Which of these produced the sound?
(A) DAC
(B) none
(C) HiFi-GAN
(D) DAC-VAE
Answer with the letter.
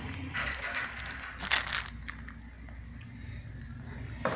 B